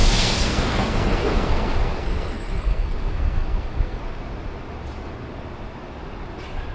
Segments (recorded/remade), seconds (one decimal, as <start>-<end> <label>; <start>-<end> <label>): 0.0-4.0 remade; 4.0-6.7 recorded